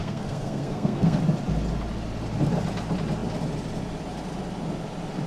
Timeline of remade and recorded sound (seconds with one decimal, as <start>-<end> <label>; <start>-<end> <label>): 0.0-1.2 remade; 1.2-5.3 recorded